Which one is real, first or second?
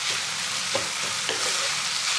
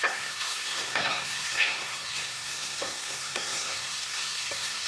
first